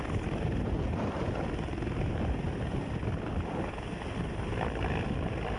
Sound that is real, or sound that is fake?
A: real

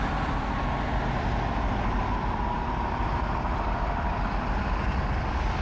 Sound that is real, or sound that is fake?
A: real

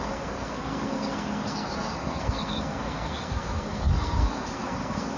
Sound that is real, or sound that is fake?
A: fake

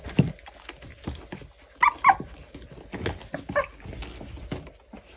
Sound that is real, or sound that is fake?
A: real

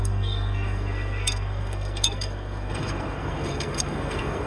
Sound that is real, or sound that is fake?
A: fake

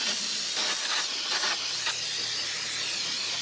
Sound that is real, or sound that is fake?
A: fake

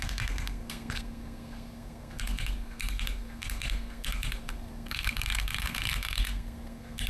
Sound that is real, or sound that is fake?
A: fake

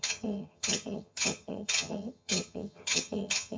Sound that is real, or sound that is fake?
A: fake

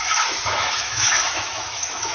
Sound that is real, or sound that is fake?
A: fake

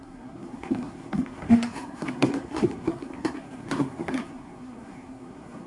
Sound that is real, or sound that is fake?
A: fake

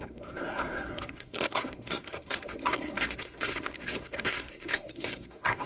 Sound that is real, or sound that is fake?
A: fake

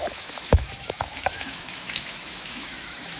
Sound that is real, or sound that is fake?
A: fake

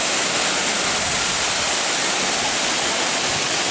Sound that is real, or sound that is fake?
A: real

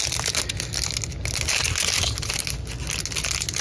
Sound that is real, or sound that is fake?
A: real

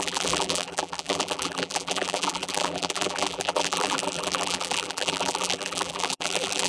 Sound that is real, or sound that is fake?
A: fake